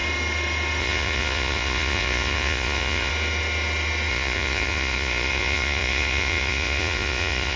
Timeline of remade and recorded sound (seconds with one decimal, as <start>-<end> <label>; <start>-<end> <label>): 0.0-0.8 recorded; 0.8-3.1 remade; 3.1-4.1 recorded; 4.1-7.6 remade